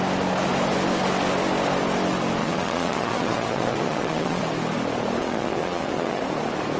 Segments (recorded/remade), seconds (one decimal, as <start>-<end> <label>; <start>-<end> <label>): 0.0-2.4 recorded; 2.4-4.4 remade; 4.4-5.2 recorded; 5.2-6.2 remade; 6.2-6.8 recorded